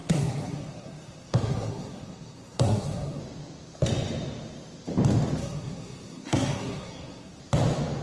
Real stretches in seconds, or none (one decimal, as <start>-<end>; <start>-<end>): 3.2-5.4; 7.4-8.0